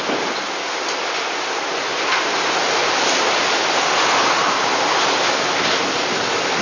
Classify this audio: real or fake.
real